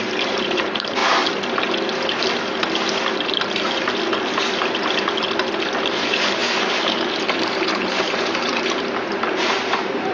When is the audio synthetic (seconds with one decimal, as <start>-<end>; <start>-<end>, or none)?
0.0-1.0; 5.8-10.1